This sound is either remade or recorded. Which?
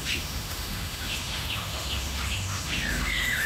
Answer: remade